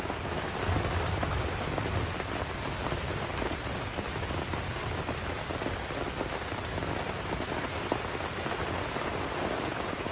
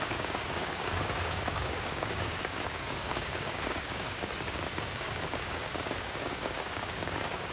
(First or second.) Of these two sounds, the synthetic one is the second